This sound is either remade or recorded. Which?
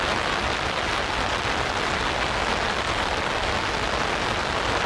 recorded